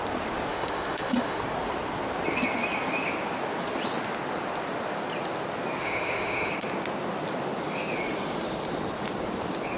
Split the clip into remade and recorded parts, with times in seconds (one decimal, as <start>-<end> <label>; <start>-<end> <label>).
0.0-0.5 recorded; 0.5-1.4 remade; 1.4-5.8 recorded; 5.8-6.5 remade; 6.5-9.8 recorded